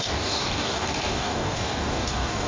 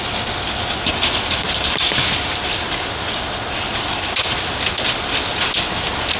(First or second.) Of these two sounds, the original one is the second